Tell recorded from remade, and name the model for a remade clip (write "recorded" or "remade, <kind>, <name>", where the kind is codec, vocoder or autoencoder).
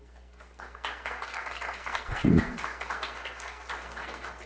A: remade, codec, SNAC